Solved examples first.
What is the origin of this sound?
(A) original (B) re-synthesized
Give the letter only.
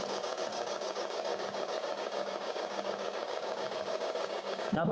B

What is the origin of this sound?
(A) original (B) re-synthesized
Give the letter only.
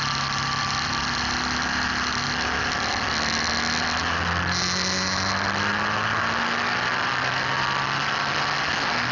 A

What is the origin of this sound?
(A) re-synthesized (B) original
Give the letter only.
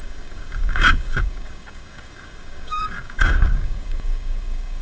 A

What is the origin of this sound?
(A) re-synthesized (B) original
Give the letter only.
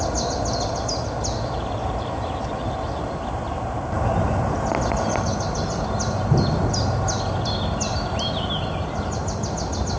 B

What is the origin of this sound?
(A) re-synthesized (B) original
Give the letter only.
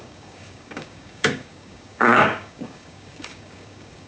A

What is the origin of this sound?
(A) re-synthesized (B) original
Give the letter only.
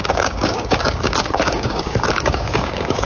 A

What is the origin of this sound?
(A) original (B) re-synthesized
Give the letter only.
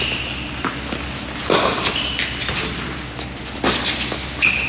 A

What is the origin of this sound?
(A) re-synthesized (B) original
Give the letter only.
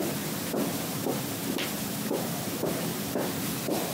B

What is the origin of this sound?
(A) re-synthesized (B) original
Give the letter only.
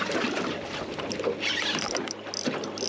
B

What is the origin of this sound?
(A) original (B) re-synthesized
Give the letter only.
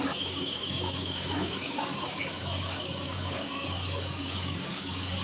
B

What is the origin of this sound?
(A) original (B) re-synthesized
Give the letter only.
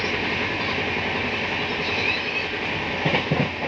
A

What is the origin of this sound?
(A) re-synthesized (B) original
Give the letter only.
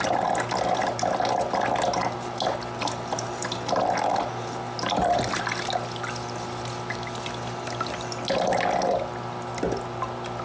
B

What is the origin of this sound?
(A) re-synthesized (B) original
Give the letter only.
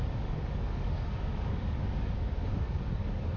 A